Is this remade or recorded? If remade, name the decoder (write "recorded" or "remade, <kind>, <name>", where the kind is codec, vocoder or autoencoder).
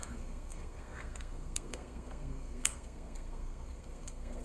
remade, codec, SNAC